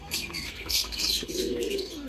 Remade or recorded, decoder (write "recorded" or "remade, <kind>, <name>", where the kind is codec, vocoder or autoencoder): remade, codec, SNAC